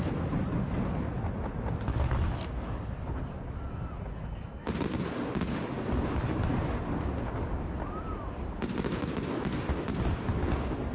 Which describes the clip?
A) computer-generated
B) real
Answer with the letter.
B